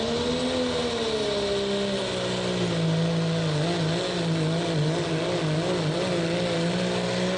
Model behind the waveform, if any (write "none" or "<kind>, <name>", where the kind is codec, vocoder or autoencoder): none